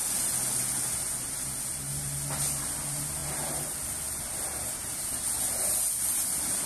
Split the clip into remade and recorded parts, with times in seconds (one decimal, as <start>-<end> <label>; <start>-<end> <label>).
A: 0.0-6.7 recorded